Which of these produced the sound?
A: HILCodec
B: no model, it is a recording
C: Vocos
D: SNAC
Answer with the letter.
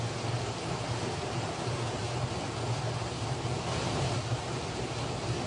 B